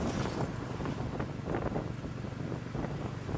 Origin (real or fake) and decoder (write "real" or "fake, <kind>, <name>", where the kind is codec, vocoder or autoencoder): real